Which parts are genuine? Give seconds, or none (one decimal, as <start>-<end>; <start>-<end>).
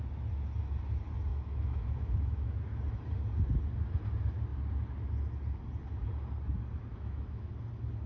0.0-1.3; 2.6-6.9; 7.5-8.1